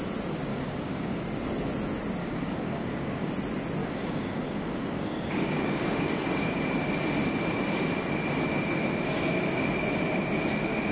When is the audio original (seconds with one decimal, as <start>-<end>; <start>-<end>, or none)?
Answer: 0.0-0.5; 1.2-2.2; 3.3-3.8; 6.6-10.9